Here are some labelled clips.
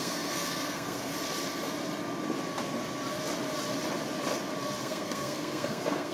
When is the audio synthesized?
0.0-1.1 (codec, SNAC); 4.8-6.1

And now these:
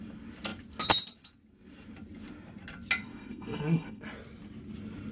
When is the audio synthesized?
3.0-4.0 (codec, SNAC)

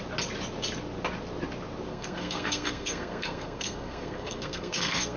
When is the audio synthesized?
1.9-5.2 (codec, SNAC)